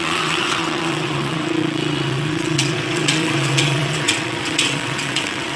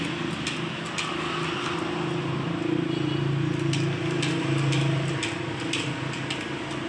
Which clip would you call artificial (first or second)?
first